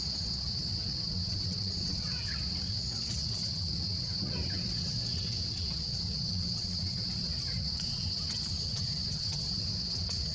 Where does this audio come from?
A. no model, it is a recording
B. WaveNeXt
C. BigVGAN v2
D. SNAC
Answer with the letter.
B